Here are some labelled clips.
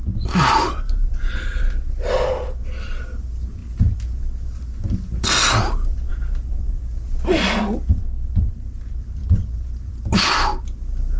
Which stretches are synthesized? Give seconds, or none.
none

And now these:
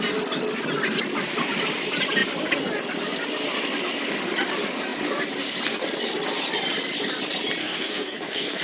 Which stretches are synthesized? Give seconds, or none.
7.6-8.6 (codec, SNAC)

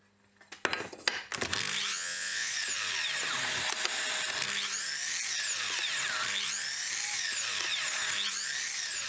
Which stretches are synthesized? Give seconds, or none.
1.9-2.5 (vocoder, WaveNeXt)